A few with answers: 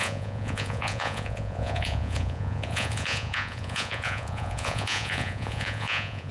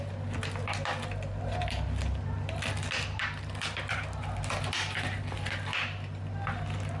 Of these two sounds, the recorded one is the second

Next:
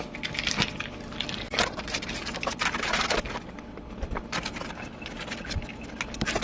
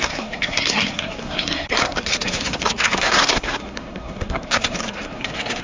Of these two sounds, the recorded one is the first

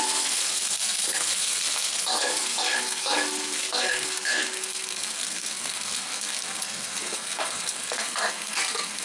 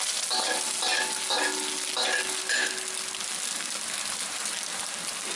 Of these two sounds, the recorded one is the second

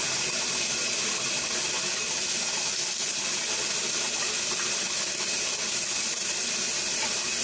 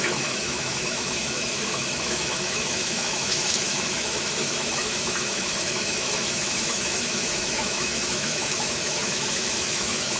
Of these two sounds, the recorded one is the first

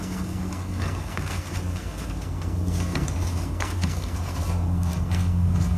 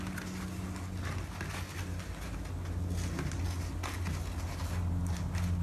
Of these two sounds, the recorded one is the second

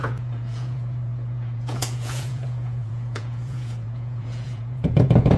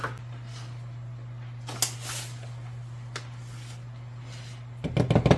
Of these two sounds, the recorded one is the second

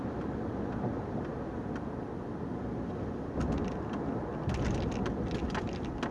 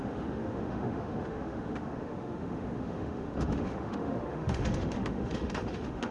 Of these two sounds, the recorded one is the first